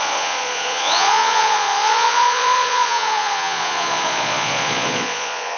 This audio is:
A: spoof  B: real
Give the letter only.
A